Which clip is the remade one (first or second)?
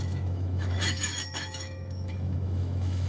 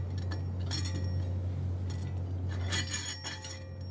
first